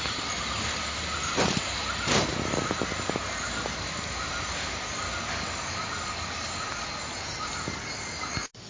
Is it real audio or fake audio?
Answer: real